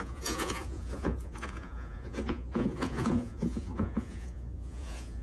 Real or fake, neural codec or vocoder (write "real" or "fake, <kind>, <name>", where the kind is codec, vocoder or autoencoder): fake, vocoder, Vocos